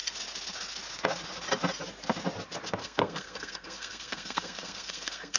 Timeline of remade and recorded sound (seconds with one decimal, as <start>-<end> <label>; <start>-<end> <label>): 0.0-2.8 recorded; 2.8-5.4 remade

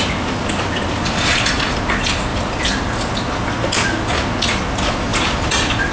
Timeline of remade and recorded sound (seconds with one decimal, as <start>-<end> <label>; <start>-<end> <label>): 0.0-0.4 recorded; 0.4-1.4 remade; 1.4-2.3 recorded; 2.3-2.9 remade; 2.9-5.1 recorded; 5.1-5.9 remade